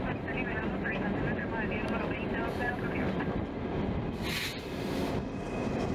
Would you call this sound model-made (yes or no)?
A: no